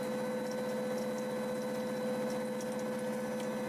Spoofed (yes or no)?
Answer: no